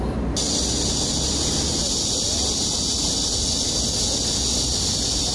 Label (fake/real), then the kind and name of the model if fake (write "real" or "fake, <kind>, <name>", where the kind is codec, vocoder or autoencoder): real